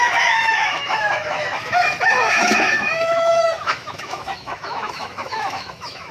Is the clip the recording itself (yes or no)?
no